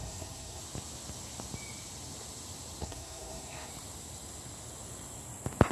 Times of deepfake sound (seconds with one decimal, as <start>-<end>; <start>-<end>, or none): 0.0-0.6; 2.8-3.7

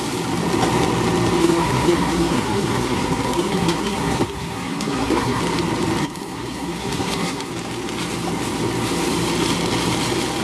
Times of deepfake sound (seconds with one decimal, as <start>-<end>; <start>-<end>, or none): 1.4-5.4; 6.0-7.5

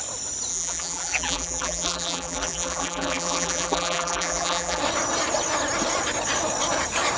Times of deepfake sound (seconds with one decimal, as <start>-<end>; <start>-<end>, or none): 0.5-4.8

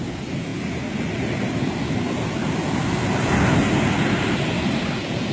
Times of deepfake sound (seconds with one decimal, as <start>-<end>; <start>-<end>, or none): none

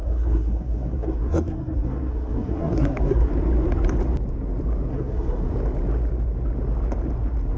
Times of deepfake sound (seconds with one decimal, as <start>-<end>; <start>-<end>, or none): 0.0-3.3; 4.9-5.5